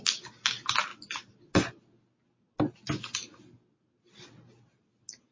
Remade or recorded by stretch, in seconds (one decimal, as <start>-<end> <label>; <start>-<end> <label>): 0.0-5.3 recorded